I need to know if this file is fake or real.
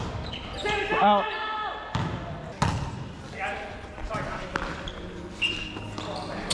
real